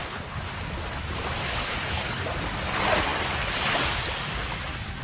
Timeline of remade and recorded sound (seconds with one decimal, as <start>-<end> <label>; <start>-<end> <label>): 0.0-0.5 remade; 0.5-1.4 recorded; 1.4-2.2 remade; 2.2-5.0 recorded